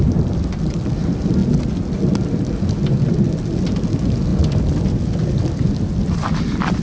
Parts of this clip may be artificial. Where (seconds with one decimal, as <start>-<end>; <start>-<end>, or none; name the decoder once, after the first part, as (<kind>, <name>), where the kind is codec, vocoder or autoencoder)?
none